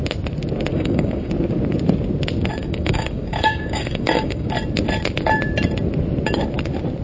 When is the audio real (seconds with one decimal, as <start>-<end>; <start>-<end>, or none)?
0.0-0.7; 1.3-2.6; 4.5-7.0